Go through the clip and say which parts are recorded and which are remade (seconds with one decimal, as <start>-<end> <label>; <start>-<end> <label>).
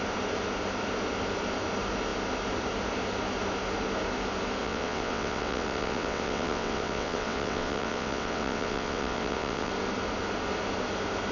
0.0-4.6 recorded; 4.6-9.7 remade; 9.7-11.3 recorded